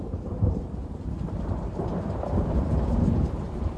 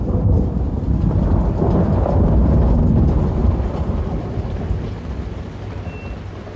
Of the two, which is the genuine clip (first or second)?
second